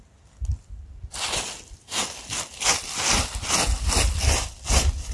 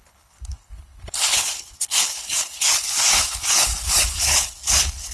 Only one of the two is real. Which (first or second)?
first